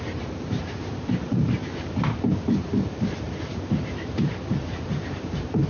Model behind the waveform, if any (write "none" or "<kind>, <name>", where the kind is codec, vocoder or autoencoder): vocoder, BigVGAN v2